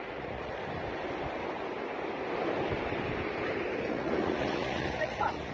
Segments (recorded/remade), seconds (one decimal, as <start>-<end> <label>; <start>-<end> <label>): 0.0-0.6 remade; 0.6-3.9 recorded; 3.9-5.5 remade